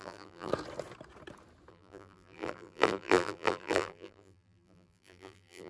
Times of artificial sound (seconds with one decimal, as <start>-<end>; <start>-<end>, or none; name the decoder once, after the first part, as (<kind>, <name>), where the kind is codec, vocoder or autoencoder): 0.0-0.5 (vocoder, BigVGAN v2); 1.7-5.7